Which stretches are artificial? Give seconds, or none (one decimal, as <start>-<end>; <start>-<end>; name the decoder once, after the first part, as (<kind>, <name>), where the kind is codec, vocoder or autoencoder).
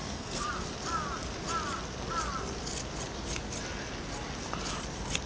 0.0-0.5 (codec, SNAC)